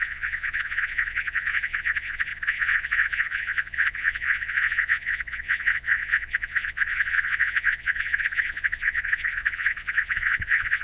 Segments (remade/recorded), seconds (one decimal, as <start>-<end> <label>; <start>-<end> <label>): 0.0-10.8 remade